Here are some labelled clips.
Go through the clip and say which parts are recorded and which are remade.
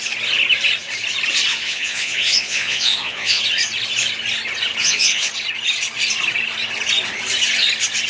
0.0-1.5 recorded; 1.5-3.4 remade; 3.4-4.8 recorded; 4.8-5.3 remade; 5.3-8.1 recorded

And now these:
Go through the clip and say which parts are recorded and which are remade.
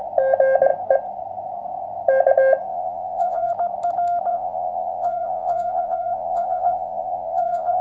0.0-2.7 recorded; 2.7-3.5 remade; 3.5-4.3 recorded; 4.3-7.8 remade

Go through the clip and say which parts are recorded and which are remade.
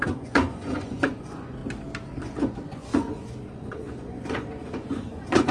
0.0-1.6 remade; 1.6-2.2 recorded; 2.2-5.5 remade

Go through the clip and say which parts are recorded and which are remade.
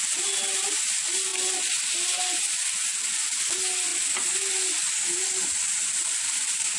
0.0-6.8 recorded